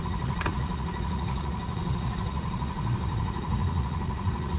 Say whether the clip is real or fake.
fake